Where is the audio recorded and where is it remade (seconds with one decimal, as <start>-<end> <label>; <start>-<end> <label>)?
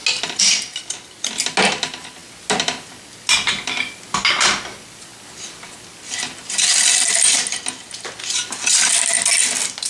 0.0-9.9 recorded